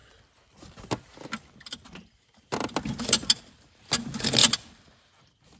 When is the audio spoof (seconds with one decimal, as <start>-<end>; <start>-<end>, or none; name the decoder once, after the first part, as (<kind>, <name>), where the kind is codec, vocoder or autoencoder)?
none